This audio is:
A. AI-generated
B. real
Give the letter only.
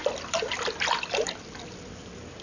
B